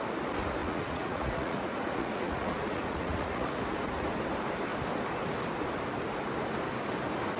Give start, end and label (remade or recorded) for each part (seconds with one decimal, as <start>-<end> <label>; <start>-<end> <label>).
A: 0.0-0.6 recorded; 0.6-4.0 remade; 4.0-7.4 recorded